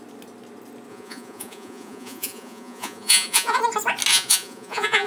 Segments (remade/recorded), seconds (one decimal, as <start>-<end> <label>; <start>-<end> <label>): 0.0-0.9 recorded; 0.9-3.6 remade; 3.6-4.1 recorded; 4.1-5.1 remade